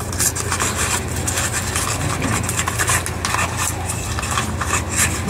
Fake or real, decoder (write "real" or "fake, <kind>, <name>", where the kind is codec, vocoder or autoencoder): real